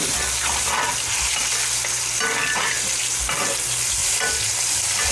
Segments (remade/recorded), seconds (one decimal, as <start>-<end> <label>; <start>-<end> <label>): 0.0-4.0 recorded; 4.0-5.1 remade